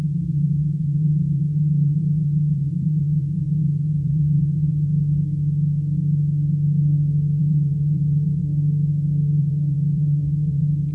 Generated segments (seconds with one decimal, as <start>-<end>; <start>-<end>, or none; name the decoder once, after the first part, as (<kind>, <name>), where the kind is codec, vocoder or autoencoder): 0.0-4.9 (vocoder, BigVGAN v2); 7.4-8.4; 9.4-10.9